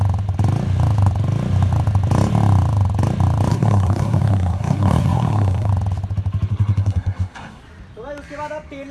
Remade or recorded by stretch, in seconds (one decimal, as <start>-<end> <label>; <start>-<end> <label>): 0.0-3.5 recorded; 3.5-5.7 remade; 5.7-6.5 recorded; 6.5-7.6 remade; 7.6-8.9 recorded